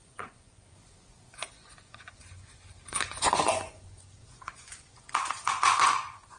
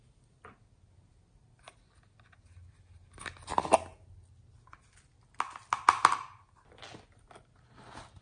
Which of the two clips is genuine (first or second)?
second